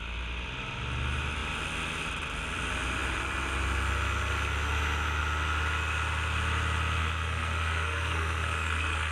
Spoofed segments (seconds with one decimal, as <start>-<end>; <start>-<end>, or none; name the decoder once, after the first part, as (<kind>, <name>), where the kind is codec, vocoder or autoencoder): 7.0-9.1 (codec, SNAC)